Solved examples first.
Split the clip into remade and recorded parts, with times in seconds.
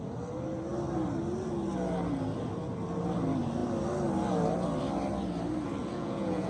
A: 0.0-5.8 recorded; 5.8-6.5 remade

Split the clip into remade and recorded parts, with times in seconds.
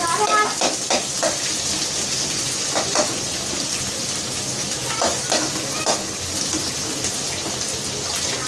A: 0.0-2.3 recorded; 2.3-3.3 remade; 3.3-8.5 recorded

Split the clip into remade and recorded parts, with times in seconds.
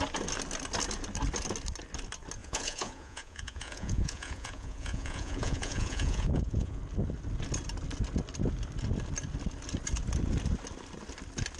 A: 0.0-2.4 recorded; 2.4-6.8 remade; 6.8-11.6 recorded